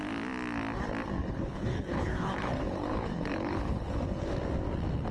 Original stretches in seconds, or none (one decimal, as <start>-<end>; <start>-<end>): 0.0-1.2; 4.3-5.1